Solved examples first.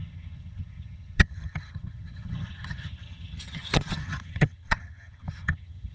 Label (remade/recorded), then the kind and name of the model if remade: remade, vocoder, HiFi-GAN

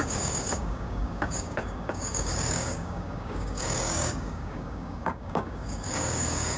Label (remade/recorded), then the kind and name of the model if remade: remade, codec, DAC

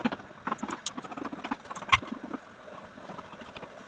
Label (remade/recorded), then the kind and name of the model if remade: recorded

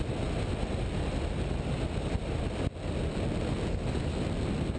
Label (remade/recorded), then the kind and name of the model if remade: recorded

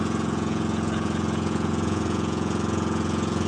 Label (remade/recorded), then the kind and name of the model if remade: remade, vocoder, Vocos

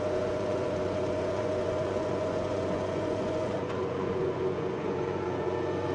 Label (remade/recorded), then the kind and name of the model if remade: remade, vocoder, Vocos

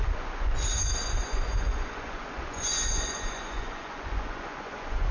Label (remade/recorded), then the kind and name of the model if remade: remade, vocoder, Vocos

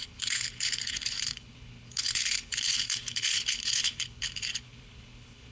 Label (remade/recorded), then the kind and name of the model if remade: remade, codec, HILCodec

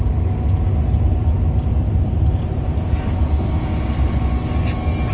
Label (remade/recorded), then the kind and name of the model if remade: recorded